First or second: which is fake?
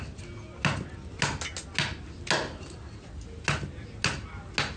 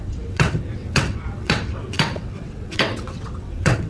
second